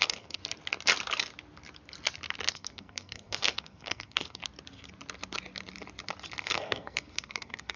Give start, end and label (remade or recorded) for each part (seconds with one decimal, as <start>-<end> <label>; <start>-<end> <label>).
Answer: 0.0-0.4 remade; 0.4-2.5 recorded; 2.5-4.4 remade; 4.4-6.4 recorded; 6.4-7.8 remade

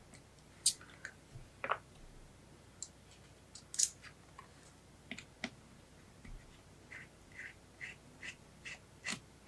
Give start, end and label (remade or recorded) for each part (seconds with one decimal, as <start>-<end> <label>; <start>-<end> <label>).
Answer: 0.0-9.5 recorded

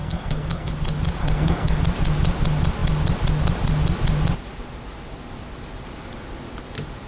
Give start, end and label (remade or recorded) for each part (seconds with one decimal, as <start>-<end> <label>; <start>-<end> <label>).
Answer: 0.0-0.7 remade; 0.7-1.2 recorded; 1.2-1.8 remade; 1.8-7.1 recorded

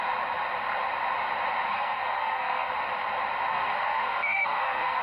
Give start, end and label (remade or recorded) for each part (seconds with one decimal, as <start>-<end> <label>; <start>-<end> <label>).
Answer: 0.0-1.7 recorded; 1.7-2.7 remade; 2.7-3.5 recorded; 3.5-5.0 remade

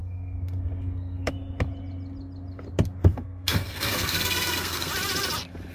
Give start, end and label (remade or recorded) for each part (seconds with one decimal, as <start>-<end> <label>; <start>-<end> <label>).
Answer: 0.0-1.3 remade; 1.3-3.1 recorded; 3.1-4.9 remade; 4.9-5.7 recorded

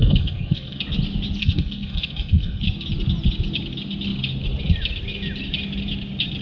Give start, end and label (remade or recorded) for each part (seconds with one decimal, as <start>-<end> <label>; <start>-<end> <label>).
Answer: 0.0-0.8 remade; 0.8-1.4 recorded; 1.4-2.6 remade; 2.6-6.4 recorded